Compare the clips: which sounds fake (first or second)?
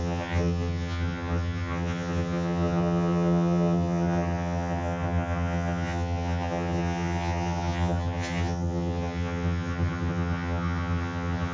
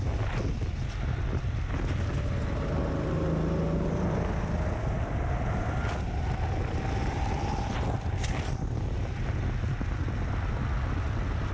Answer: first